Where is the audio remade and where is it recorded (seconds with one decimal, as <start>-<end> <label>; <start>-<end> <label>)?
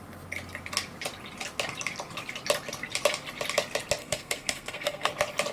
0.0-4.0 recorded; 4.0-5.1 remade; 5.1-5.5 recorded